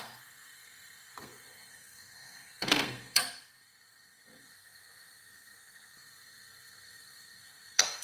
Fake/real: fake